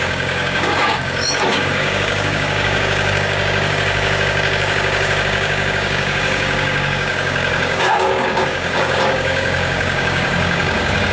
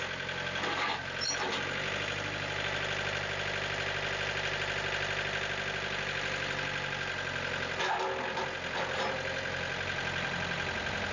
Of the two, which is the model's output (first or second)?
first